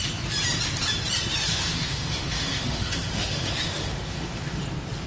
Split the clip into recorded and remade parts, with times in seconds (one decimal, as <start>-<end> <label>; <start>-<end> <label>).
0.0-1.5 recorded; 1.5-4.6 remade; 4.6-5.1 recorded